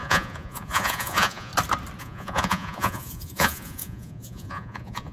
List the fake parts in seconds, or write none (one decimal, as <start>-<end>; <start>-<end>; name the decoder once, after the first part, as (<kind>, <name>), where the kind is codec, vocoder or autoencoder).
0.0-1.5 (vocoder, Vocos); 2.0-5.1